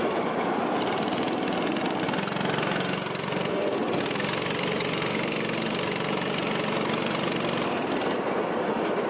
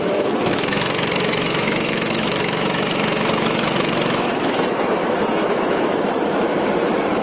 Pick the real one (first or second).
first